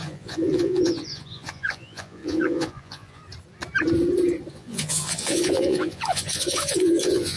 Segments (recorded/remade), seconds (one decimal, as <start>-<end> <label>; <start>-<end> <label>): 0.0-3.2 remade; 3.2-4.5 recorded; 4.5-7.4 remade